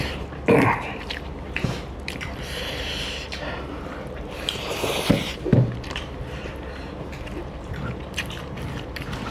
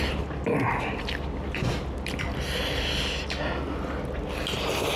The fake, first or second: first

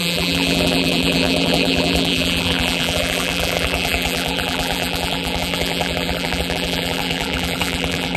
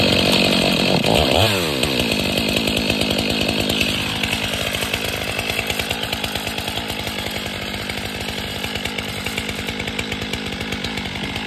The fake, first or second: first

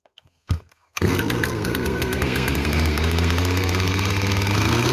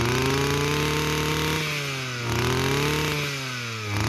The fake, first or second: first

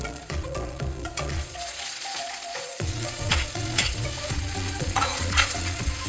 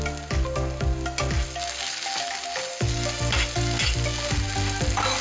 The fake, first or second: first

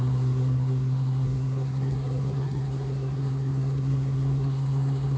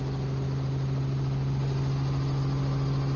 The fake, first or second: first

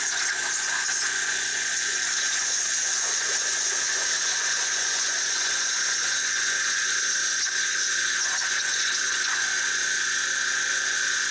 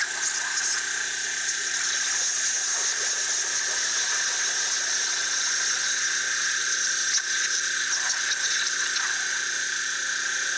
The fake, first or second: first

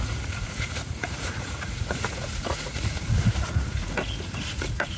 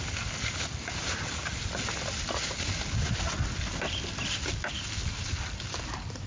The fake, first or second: first